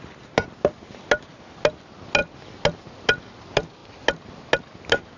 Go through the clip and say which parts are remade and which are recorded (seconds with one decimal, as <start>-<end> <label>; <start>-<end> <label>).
0.0-5.2 recorded